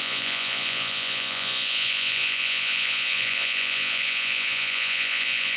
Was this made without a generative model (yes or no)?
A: no